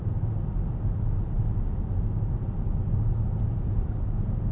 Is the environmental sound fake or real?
real